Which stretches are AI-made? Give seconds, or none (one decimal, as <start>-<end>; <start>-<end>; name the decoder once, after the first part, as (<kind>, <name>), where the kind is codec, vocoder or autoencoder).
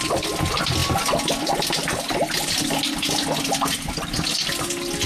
none